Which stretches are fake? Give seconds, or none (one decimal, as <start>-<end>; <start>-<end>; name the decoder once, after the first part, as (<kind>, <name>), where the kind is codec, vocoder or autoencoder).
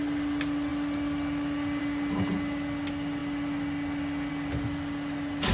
none